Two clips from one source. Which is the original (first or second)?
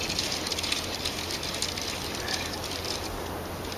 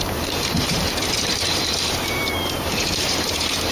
first